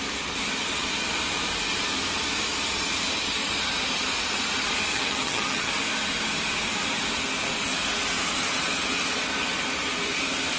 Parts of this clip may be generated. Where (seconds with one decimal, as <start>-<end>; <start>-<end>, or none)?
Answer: 4.9-5.7

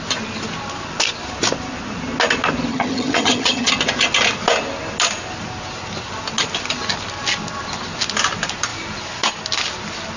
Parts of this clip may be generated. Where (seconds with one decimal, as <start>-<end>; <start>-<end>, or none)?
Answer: 2.7-3.7